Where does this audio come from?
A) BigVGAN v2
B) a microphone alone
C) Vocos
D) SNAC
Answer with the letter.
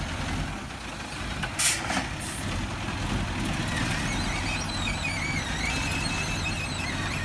B